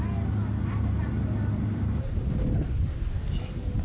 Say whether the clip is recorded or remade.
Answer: recorded